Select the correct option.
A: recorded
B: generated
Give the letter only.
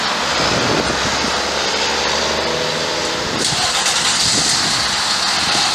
A